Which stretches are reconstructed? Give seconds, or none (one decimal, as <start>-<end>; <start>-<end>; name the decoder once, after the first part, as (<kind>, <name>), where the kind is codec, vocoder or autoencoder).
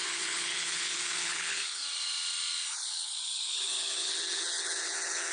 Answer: 0.0-1.8 (codec, HILCodec); 2.7-5.3